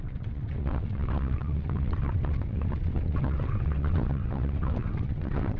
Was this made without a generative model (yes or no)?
no